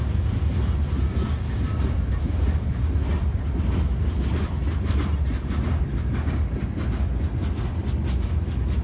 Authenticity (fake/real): real